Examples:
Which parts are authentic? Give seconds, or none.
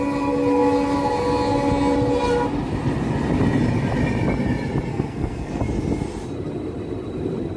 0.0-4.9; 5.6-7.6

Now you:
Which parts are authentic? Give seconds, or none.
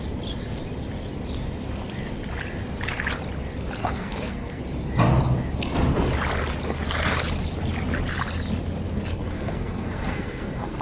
0.0-3.8; 4.6-9.1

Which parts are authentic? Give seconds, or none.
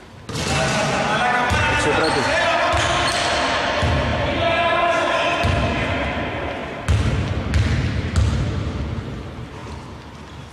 0.0-10.5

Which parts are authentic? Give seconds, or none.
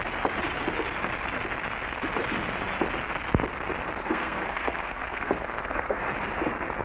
0.0-4.0; 6.0-6.8